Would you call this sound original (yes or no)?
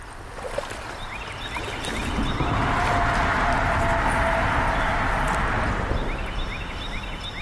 yes